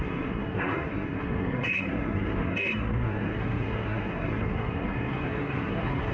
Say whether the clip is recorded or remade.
remade